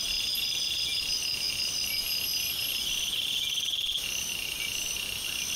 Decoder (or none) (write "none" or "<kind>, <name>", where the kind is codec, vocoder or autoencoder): none